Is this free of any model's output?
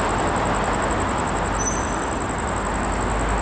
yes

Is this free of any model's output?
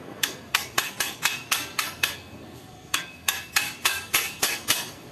no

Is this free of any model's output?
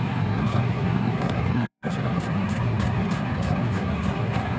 no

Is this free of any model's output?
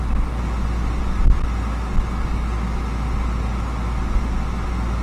yes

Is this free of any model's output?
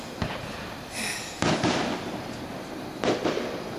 yes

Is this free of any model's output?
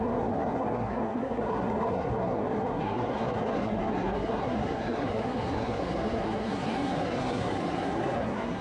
no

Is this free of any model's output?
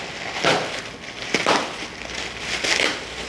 yes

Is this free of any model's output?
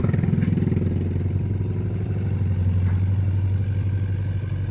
yes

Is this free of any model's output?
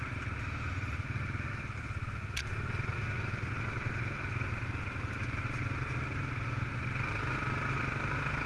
yes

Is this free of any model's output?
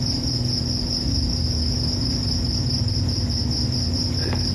yes